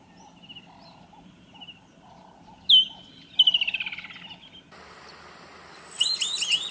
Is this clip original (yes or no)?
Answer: yes